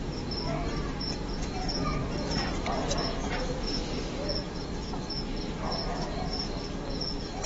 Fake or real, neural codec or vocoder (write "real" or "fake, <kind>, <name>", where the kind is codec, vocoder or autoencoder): real